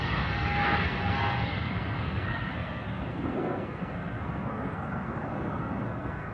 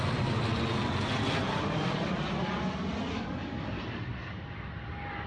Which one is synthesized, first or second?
first